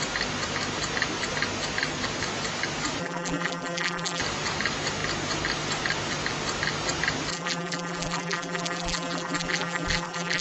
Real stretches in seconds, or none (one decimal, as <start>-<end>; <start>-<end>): 0.0-3.0; 4.2-7.3